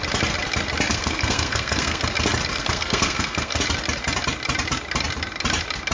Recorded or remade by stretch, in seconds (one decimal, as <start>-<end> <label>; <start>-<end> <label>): 0.0-0.9 recorded; 0.9-2.0 remade; 2.0-2.5 recorded; 2.5-3.6 remade; 3.6-5.9 recorded